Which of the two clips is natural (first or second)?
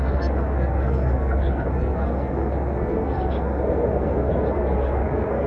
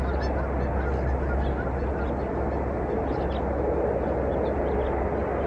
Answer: second